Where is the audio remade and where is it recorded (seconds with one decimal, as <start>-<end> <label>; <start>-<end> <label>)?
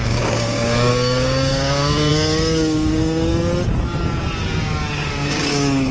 0.0-3.3 remade; 3.3-5.1 recorded; 5.1-5.9 remade